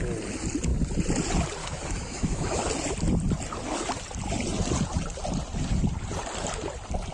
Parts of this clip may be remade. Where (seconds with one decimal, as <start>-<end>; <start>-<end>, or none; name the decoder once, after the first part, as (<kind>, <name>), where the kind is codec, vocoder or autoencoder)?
1.6-2.6 (autoencoder, DAC-VAE)